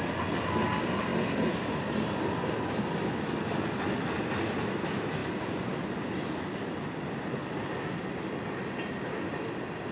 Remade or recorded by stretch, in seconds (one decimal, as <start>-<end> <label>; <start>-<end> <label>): 0.0-9.9 recorded